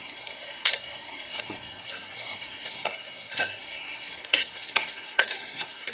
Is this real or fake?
fake